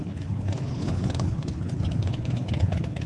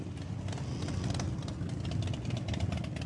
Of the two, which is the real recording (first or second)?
second